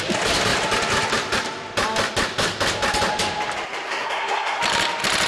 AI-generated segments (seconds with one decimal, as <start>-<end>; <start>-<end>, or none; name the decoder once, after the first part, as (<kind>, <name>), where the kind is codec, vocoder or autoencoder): 3.9-4.6 (codec, SNAC)